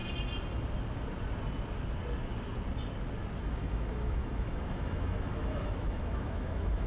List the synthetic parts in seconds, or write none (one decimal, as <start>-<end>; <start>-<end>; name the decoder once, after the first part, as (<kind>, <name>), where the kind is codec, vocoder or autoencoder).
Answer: 3.4-6.9 (autoencoder, DAC-VAE)